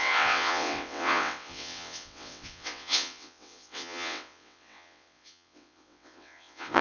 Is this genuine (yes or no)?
no